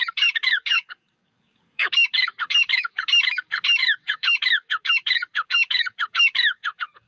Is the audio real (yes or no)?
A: no